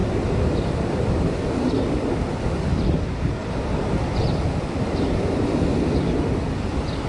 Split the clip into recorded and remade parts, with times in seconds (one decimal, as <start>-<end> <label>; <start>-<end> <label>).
0.0-7.1 recorded

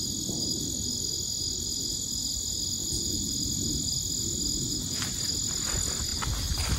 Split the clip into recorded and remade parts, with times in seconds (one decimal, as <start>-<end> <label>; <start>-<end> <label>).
0.0-2.8 recorded; 2.8-3.3 remade; 3.3-6.8 recorded

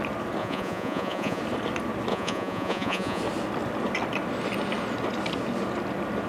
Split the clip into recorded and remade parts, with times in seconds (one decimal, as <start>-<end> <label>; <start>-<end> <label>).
0.0-0.4 recorded; 0.4-1.4 remade; 1.4-2.1 recorded; 2.1-3.2 remade; 3.2-6.3 recorded

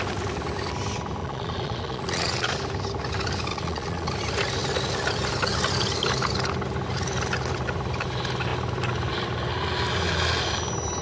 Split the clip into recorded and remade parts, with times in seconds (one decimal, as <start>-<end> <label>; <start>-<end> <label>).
0.0-1.2 recorded; 1.2-2.5 remade; 2.5-3.5 recorded; 3.5-4.1 remade; 4.1-11.0 recorded

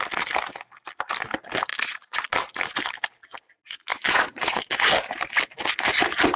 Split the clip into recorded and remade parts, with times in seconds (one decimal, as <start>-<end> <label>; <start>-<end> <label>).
0.0-1.7 recorded; 1.7-2.3 remade; 2.3-3.9 recorded; 3.9-4.7 remade; 4.7-6.4 recorded